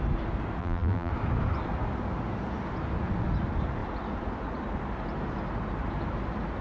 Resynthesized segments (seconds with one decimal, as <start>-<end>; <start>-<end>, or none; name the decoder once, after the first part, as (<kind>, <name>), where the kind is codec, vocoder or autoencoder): 0.6-1.1 (vocoder, BigVGAN v2)